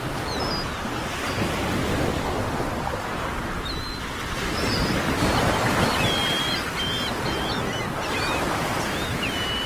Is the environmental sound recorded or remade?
recorded